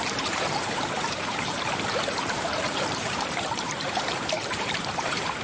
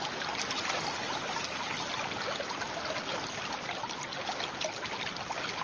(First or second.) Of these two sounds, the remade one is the first